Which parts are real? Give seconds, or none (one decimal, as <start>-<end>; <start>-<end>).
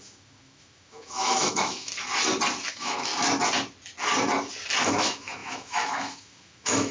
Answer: 1.9-2.7; 3.1-4.9